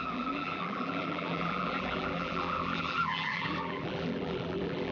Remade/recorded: remade